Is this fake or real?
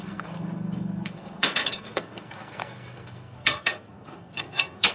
fake